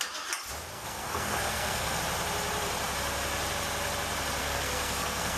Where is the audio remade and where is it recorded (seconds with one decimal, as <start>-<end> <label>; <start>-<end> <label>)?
0.0-0.7 recorded; 0.7-2.0 remade; 2.0-4.4 recorded; 4.4-5.4 remade